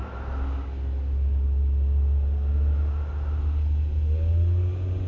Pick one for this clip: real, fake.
real